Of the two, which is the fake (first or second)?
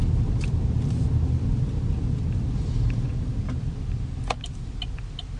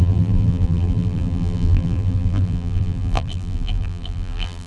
second